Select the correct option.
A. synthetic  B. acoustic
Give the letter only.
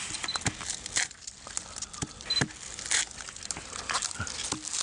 B